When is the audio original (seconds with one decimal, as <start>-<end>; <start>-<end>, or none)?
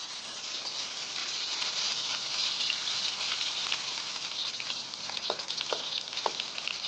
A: 0.6-1.2; 1.9-6.9